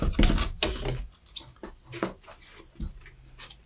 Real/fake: real